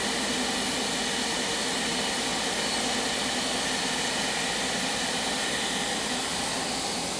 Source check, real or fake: real